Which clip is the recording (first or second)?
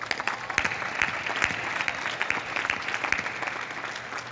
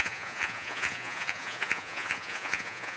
first